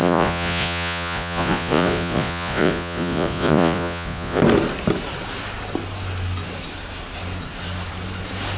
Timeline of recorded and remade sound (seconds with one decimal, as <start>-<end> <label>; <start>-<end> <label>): 0.0-4.4 remade; 4.4-8.6 recorded